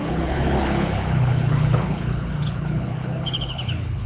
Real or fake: fake